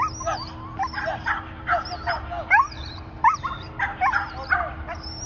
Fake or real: real